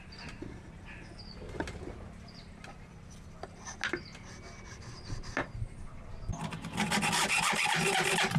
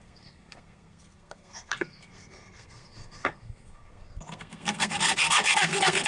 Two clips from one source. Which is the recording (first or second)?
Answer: first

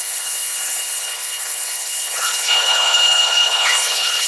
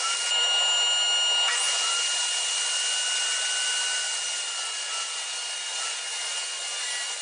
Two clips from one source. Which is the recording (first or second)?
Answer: second